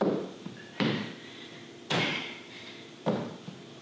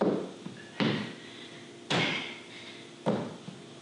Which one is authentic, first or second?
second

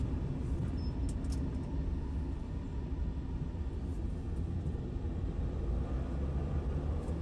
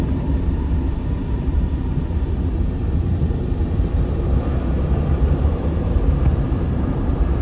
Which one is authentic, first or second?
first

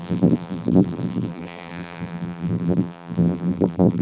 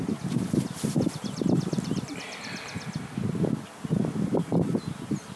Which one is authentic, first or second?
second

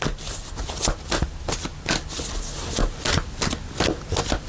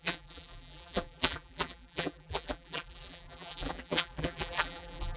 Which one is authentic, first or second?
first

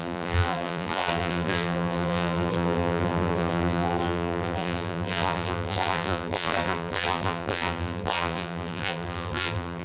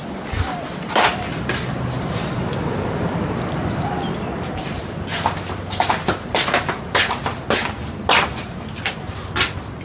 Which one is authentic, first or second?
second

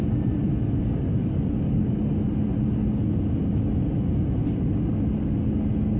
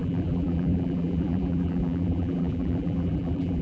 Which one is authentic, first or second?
first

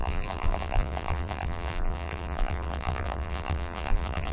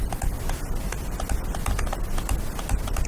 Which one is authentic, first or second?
second